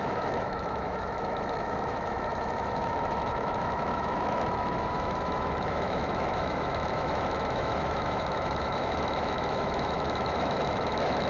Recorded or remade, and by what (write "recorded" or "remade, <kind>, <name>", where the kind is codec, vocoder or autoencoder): remade, autoencoder, DAC-VAE